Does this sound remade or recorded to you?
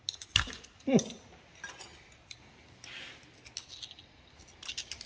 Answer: recorded